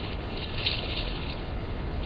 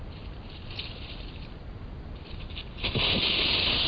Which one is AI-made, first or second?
first